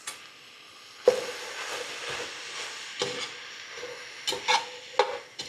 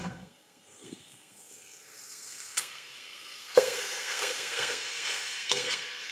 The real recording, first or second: first